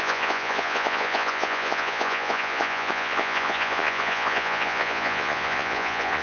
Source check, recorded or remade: remade